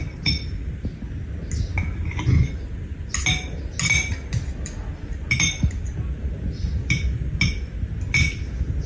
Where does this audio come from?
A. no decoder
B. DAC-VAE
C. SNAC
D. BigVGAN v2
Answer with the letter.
A